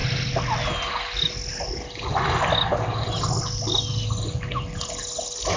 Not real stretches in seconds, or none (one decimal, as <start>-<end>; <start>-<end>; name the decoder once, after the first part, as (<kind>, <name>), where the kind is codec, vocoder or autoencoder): none